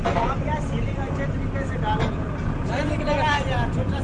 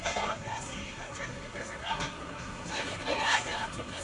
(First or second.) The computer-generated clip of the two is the second